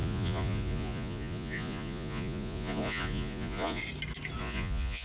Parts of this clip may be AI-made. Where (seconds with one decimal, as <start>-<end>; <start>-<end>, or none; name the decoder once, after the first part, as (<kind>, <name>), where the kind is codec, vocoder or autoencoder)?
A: 0.0-3.8 (vocoder, Vocos); 4.4-5.0